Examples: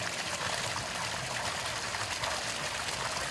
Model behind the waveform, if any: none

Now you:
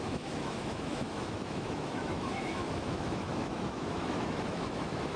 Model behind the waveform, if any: autoencoder, DAC-VAE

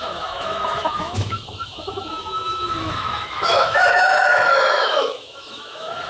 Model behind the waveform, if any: autoencoder, DAC-VAE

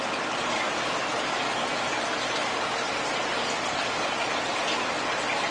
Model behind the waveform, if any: none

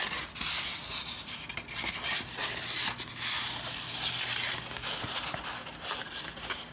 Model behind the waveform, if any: none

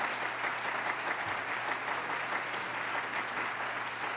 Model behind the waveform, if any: none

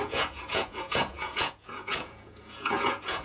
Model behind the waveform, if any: vocoder, Vocos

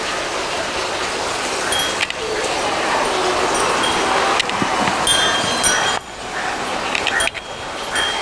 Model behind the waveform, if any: none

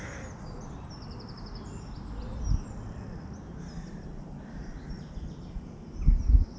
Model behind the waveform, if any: none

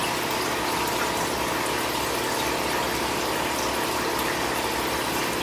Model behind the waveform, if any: none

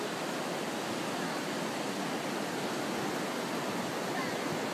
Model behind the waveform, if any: none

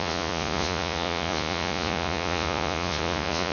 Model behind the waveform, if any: vocoder, Vocos